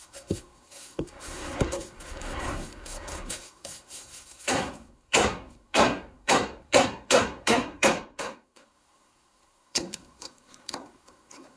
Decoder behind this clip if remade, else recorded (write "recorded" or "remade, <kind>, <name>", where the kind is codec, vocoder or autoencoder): remade, codec, SNAC